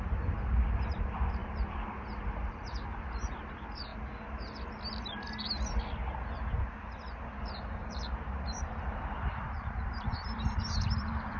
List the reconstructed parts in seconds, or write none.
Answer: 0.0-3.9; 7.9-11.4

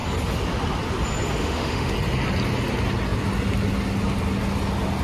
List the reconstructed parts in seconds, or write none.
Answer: 1.4-1.9

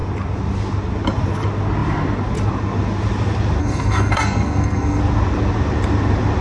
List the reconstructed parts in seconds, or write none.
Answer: 3.6-5.0

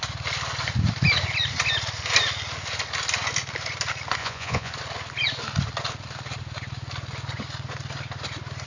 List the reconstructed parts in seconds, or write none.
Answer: 4.2-4.7